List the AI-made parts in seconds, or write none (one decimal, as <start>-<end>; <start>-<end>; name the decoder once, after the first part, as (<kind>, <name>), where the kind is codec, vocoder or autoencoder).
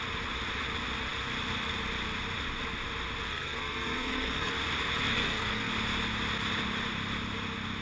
3.3-4.5 (codec, SNAC); 5.1-5.7